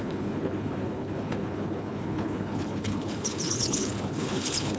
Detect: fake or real fake